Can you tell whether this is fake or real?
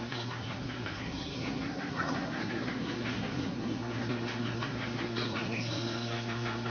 fake